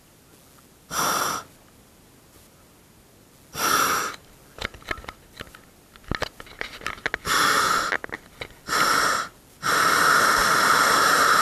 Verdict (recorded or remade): recorded